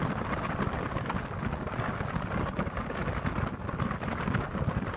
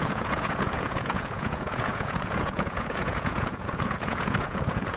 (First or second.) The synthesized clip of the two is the second